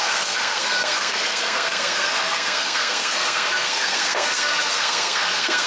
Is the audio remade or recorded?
remade